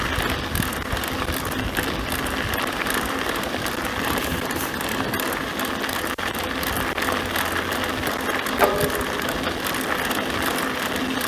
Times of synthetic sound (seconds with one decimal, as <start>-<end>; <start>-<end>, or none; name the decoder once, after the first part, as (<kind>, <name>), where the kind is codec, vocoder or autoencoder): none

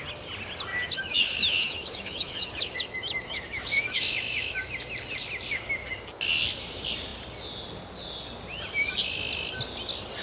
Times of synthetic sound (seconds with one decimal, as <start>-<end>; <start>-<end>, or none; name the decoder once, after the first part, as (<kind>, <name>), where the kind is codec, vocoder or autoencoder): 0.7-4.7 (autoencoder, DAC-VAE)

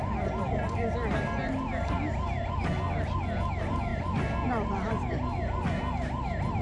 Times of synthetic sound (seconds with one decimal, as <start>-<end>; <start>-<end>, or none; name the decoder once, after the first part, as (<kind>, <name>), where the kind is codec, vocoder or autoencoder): none

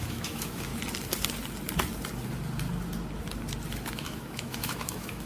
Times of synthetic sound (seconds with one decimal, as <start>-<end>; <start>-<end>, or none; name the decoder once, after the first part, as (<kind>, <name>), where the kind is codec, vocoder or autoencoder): 0.0-0.7 (autoencoder, DAC-VAE); 3.9-5.3

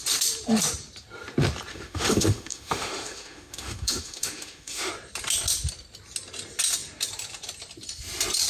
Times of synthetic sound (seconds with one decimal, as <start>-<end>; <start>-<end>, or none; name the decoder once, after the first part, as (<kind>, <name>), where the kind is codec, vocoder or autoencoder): 1.7-4.9 (autoencoder, DAC-VAE)

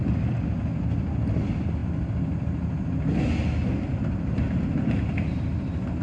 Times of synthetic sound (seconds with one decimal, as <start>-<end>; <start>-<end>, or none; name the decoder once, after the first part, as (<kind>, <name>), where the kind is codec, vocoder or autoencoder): none

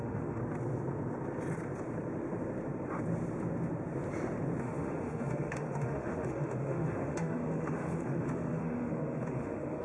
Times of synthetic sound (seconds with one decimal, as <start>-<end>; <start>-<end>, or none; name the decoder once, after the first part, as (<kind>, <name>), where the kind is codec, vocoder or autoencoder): 0.0-0.4 (autoencoder, DAC-VAE); 4.6-9.8